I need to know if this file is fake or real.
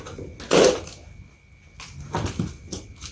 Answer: real